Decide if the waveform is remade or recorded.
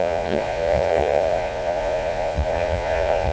remade